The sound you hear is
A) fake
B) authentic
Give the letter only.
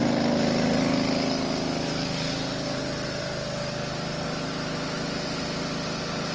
B